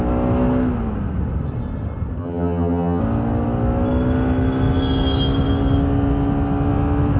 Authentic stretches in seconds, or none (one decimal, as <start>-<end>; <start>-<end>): 0.0-2.2; 3.0-7.2